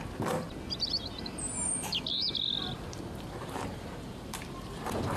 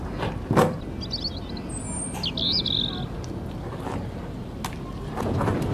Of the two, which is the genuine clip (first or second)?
second